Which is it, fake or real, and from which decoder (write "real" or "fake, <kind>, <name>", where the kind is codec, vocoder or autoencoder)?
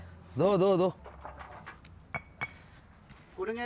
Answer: real